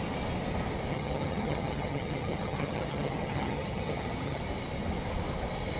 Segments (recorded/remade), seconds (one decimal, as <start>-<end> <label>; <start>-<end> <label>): 0.0-0.9 recorded; 0.9-4.4 remade; 4.4-5.8 recorded